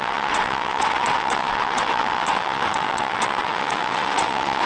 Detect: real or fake fake